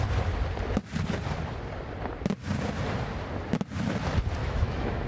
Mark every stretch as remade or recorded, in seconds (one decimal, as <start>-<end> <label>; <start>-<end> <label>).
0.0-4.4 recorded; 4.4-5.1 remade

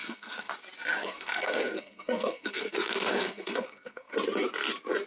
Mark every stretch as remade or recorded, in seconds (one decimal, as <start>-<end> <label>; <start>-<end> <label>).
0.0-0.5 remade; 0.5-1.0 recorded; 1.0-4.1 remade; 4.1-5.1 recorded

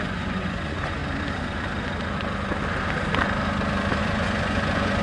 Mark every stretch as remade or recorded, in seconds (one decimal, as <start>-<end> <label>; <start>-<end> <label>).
0.0-1.0 remade; 1.0-4.0 recorded; 4.0-5.0 remade

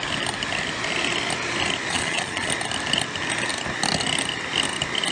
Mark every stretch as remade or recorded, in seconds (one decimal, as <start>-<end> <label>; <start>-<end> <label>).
0.0-1.9 recorded; 1.9-2.5 remade; 2.5-5.1 recorded

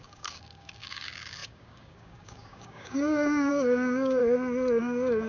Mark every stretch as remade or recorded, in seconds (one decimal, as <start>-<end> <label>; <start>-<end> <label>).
0.0-4.2 remade; 4.2-4.8 recorded; 4.8-5.3 remade